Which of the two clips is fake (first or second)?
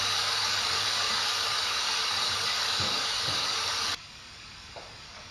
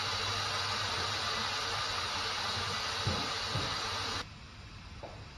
first